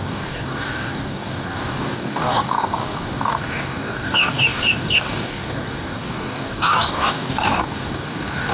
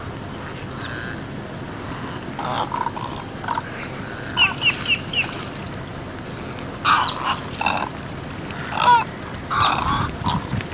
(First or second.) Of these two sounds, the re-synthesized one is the first